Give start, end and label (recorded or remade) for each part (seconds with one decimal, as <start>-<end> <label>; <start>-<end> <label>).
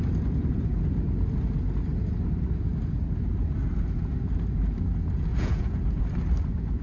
0.0-5.3 recorded; 5.3-6.0 remade; 6.0-6.8 recorded